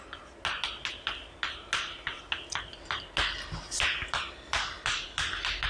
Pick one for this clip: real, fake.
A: real